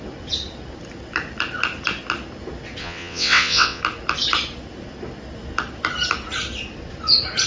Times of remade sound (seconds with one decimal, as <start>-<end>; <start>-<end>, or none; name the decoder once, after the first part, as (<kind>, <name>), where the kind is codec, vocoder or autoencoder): 2.8-3.8 (vocoder, WaveNeXt)